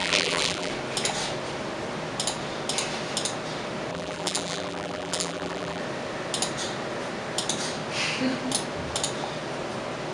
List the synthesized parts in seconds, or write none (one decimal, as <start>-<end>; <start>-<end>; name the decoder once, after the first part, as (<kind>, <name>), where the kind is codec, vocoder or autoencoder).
0.0-0.7 (vocoder, BigVGAN v2); 3.9-5.8